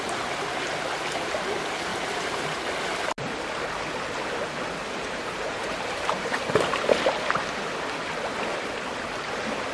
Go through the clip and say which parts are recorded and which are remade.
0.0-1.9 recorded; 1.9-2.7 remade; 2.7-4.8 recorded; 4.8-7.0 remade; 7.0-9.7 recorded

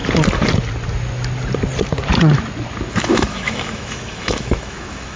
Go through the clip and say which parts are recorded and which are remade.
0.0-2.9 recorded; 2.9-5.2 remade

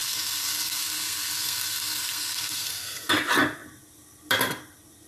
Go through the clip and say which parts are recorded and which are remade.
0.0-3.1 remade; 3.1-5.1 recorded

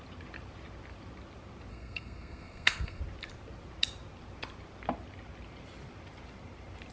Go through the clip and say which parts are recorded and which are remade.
0.0-1.7 recorded; 1.7-3.0 remade; 3.0-6.9 recorded

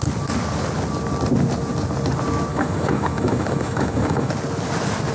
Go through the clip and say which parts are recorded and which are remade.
0.0-2.5 recorded; 2.5-4.3 remade; 4.3-5.1 recorded